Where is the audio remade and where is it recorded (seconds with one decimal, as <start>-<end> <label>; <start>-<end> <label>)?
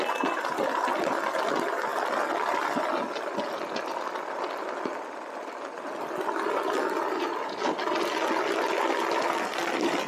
0.0-4.6 recorded; 4.6-5.6 remade; 5.6-10.1 recorded